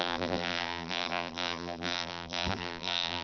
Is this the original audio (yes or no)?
no